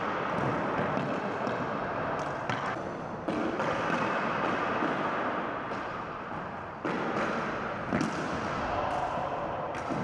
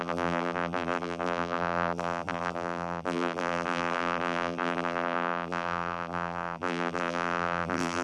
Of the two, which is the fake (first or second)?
second